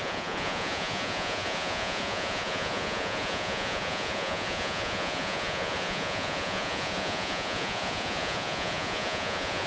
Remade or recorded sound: remade